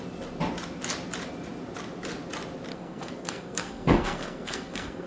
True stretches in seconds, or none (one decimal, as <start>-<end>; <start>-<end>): 0.0-2.7